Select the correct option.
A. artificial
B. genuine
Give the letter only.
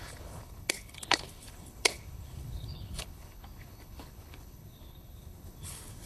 A